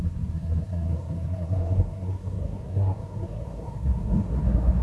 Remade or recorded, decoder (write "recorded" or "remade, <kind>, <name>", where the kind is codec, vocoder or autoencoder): remade, codec, SNAC